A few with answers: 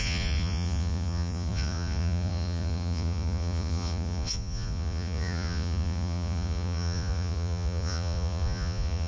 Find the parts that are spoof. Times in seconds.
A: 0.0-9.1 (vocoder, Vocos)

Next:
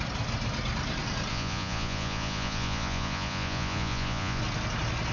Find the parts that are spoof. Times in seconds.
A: 1.3-4.4 (vocoder, Vocos)

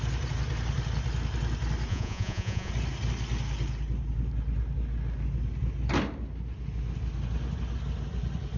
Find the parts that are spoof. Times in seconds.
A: 1.9-2.7 (vocoder, Vocos)

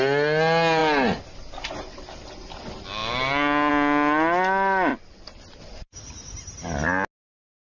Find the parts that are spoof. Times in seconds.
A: none

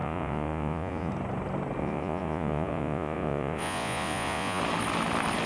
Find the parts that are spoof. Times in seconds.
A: 0.0-1.1 (vocoder, Vocos); 1.8-4.6

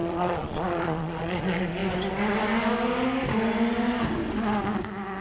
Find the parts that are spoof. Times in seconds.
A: 0.0-1.4 (vocoder, Vocos)